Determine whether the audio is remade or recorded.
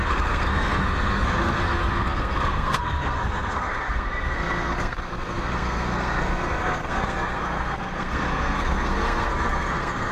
remade